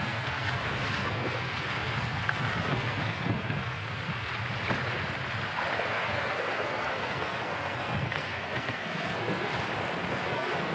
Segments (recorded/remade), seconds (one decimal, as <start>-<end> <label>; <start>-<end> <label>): 0.0-4.3 remade; 4.3-5.7 recorded; 5.7-9.5 remade; 9.5-10.1 recorded; 10.1-10.7 remade

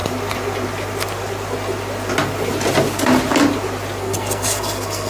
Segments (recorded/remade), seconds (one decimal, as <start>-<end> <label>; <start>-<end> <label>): 0.0-4.0 recorded; 4.0-5.1 remade